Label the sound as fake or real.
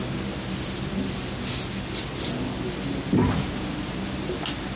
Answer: real